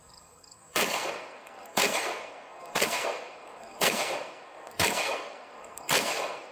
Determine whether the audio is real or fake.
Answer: fake